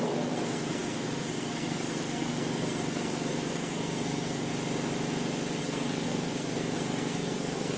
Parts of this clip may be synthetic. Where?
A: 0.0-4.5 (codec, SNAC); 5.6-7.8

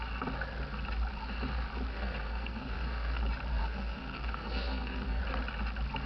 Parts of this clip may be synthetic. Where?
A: 1.9-3.2 (codec, SNAC); 3.6-5.2

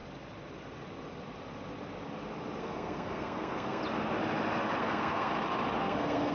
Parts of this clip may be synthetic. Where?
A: 2.6-3.8 (codec, SNAC); 4.8-5.3; 5.8-6.3

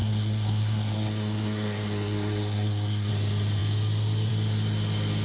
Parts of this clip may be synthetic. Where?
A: 0.0-3.1 (codec, SNAC)

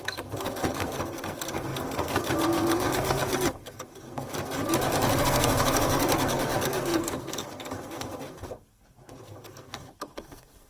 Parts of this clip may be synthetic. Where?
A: 0.0-4.6 (codec, SNAC); 5.2-10.7